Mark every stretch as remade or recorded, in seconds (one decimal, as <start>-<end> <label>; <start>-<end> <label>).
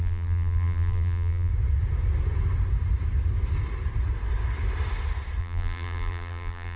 0.0-1.5 remade; 1.5-5.4 recorded; 5.4-6.8 remade